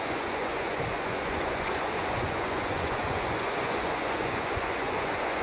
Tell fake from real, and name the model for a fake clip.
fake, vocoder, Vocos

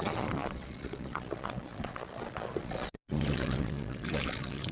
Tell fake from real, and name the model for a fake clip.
fake, vocoder, Vocos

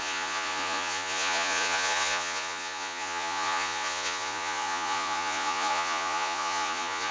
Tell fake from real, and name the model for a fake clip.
fake, vocoder, Vocos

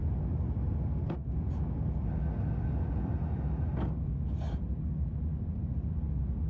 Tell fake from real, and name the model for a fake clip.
real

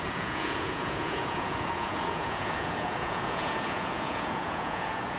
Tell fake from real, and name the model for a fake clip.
fake, vocoder, Vocos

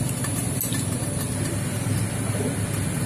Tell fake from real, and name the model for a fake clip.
real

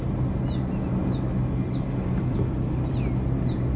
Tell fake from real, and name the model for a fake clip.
real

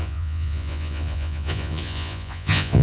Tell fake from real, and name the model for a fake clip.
fake, vocoder, Vocos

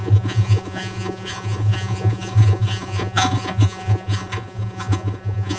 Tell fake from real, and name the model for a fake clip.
fake, vocoder, Vocos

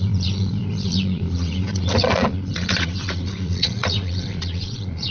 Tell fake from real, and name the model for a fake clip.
fake, vocoder, Vocos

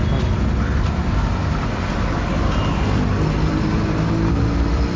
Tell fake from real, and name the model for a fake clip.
real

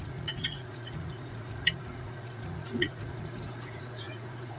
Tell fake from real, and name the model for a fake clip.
fake, vocoder, Vocos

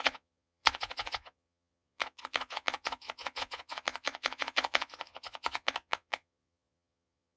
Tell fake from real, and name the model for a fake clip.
fake, vocoder, Vocos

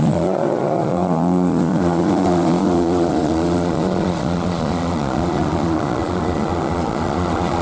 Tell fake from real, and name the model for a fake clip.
fake, vocoder, Vocos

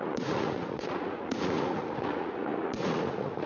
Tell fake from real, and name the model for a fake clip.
fake, vocoder, Vocos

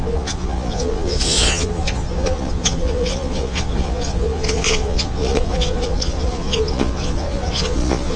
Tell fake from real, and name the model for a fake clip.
fake, vocoder, Vocos